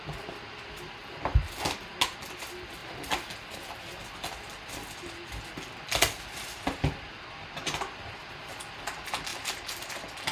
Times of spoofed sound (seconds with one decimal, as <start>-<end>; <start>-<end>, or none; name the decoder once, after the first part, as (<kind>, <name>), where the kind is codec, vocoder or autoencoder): 2.8-3.3 (vocoder, BigVGAN v2); 9.3-9.9